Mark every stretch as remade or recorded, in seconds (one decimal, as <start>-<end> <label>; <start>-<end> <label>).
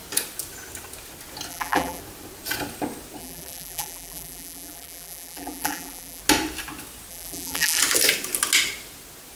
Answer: 0.0-1.5 recorded; 1.5-2.0 remade; 2.0-3.2 recorded; 3.2-6.2 remade; 6.2-7.1 recorded; 7.1-7.8 remade; 7.8-9.4 recorded